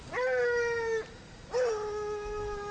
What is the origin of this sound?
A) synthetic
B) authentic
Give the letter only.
B